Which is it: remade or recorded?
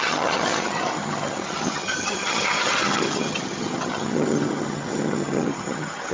remade